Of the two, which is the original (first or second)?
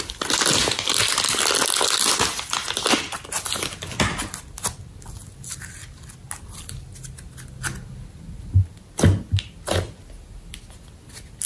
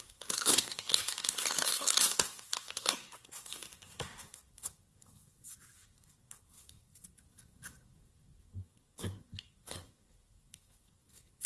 first